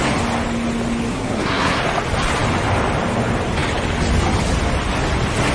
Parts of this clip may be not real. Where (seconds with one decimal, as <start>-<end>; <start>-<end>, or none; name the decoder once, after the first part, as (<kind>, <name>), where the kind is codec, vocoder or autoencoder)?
1.1-1.8 (codec, SNAC)